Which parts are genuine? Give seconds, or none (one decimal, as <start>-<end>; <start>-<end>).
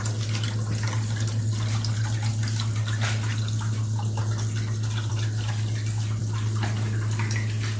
0.0-7.8